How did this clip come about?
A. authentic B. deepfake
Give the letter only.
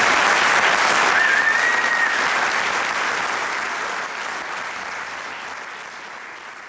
A